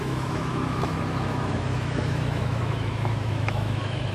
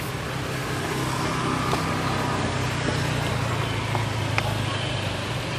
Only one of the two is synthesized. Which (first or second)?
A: first